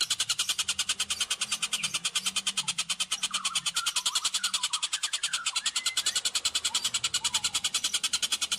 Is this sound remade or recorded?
recorded